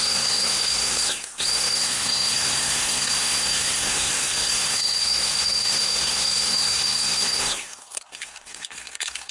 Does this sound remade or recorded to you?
remade